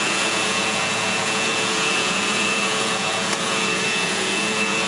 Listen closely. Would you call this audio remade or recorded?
remade